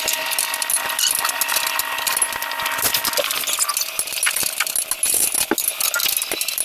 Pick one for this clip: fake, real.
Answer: real